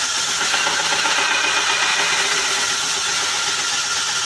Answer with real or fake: real